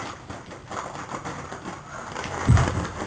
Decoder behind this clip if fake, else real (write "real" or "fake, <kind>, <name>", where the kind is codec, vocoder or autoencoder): fake, vocoder, BigVGAN v2